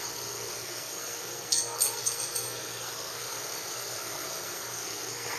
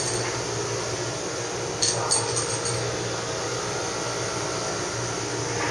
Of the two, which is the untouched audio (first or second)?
second